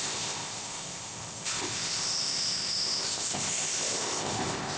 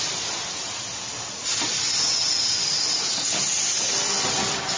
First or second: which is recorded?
second